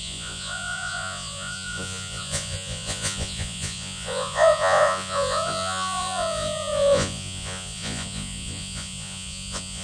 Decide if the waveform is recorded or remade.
remade